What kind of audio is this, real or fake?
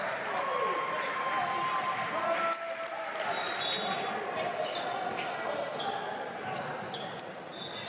real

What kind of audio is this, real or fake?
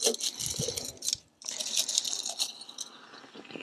real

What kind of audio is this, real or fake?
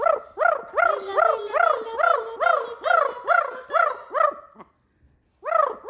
real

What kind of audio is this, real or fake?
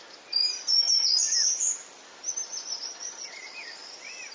fake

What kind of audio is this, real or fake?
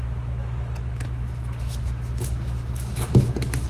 fake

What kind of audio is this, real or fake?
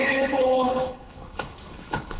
fake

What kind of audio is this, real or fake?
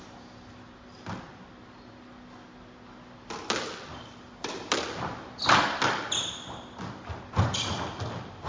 real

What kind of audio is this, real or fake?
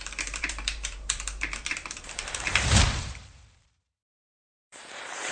fake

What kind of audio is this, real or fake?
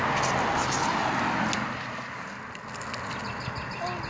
real